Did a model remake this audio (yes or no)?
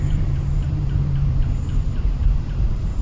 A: yes